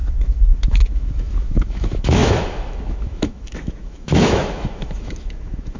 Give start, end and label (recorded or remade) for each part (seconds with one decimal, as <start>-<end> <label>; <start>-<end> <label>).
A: 0.0-5.8 remade